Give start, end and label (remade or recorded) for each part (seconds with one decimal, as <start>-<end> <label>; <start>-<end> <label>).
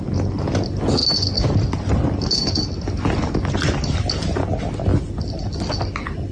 0.0-6.3 recorded